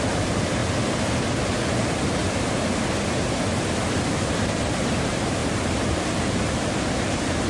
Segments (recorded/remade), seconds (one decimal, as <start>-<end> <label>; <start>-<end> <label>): 0.0-0.6 remade; 0.6-4.3 recorded; 4.3-7.5 remade